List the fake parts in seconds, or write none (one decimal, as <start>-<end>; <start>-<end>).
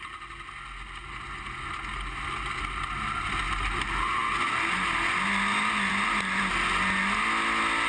none